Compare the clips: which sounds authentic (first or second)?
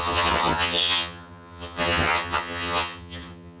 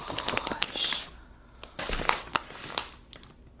second